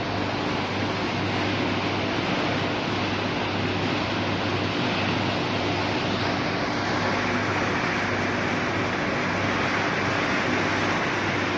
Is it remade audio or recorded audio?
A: recorded